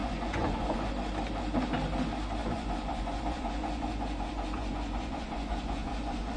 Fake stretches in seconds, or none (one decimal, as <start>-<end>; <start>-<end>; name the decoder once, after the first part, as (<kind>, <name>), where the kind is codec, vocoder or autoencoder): 0.0-0.9 (vocoder, Vocos); 2.4-6.4